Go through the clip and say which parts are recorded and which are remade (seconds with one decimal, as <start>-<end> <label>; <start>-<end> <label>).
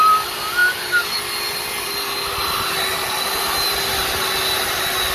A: 0.0-5.1 recorded